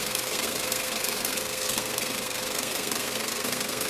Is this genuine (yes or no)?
no